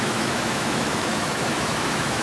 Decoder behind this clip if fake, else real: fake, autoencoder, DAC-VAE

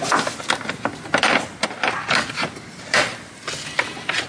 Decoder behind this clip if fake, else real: real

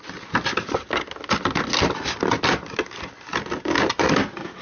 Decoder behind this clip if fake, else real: real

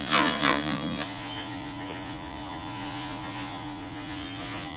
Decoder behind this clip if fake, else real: fake, vocoder, Vocos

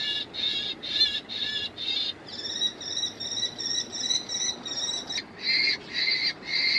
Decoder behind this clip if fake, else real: real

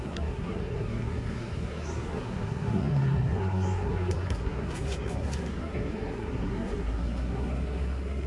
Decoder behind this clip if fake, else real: fake, codec, SNAC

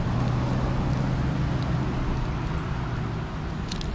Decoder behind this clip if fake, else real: real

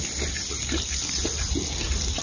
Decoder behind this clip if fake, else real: real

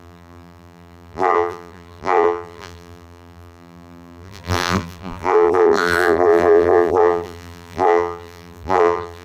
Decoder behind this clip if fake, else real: fake, vocoder, BigVGAN v2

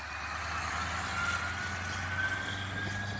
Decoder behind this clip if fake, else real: real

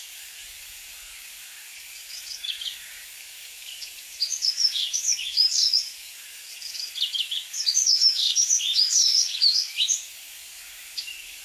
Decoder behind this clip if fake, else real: fake, codec, DAC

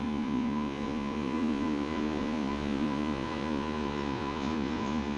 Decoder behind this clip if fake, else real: fake, vocoder, Vocos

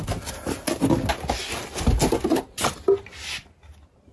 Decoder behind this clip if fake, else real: real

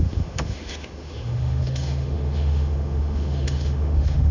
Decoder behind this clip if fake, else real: fake, autoencoder, DAC-VAE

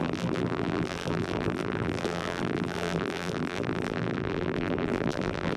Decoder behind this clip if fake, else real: fake, vocoder, BigVGAN v2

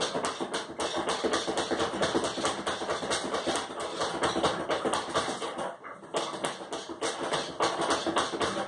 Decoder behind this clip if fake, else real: real